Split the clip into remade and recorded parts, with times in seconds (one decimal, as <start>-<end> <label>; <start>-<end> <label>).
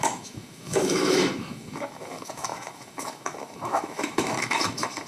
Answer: 0.0-5.1 remade